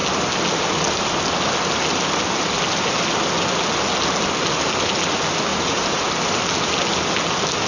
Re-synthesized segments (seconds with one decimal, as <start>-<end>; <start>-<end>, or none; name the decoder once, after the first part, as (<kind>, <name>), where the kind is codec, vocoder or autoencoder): 5.5-6.2 (vocoder, BigVGAN v2)